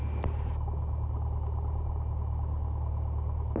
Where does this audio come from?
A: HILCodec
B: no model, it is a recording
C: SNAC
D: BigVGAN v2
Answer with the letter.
B